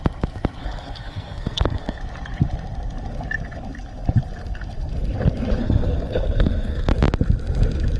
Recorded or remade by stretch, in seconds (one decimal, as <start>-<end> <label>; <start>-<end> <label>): 0.0-0.6 recorded; 0.6-2.0 remade; 2.0-5.6 recorded; 5.6-6.9 remade; 6.9-8.0 recorded